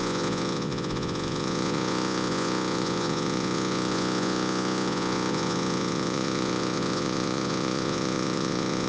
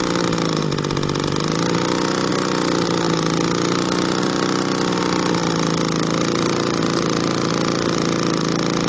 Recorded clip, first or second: second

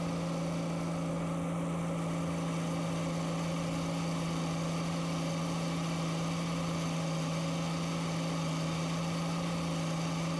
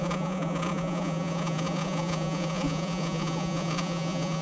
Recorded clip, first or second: first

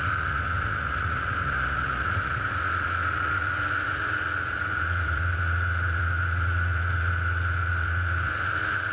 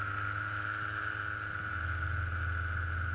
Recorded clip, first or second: second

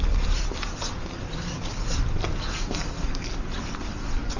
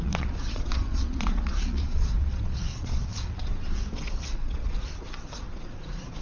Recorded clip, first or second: first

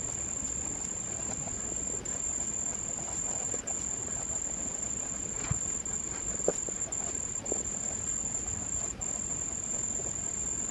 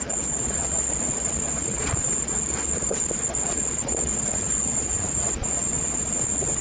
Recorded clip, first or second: first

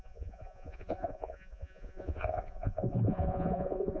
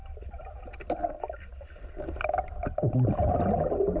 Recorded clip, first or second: second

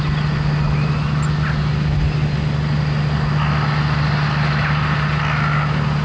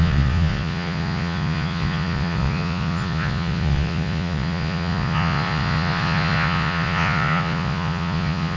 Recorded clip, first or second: first